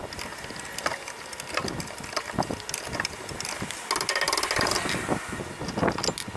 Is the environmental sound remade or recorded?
recorded